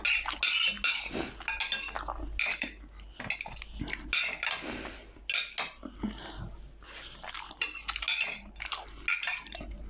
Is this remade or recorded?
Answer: recorded